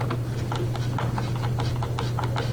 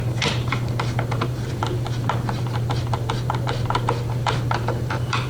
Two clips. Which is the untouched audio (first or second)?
first